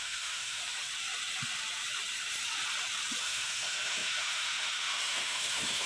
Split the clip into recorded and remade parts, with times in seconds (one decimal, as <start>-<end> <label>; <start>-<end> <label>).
0.0-0.6 remade; 0.6-3.2 recorded; 3.2-5.9 remade